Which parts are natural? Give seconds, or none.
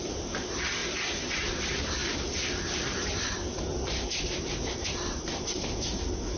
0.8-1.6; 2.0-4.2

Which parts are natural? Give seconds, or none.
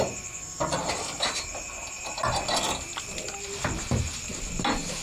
0.0-5.0